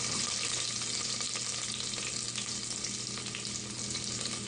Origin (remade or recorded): recorded